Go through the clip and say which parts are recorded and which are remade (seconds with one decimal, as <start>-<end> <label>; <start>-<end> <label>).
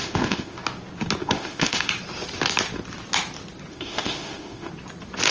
0.0-0.6 remade; 0.6-1.2 recorded; 1.2-1.9 remade; 1.9-3.7 recorded; 3.7-4.7 remade; 4.7-5.3 recorded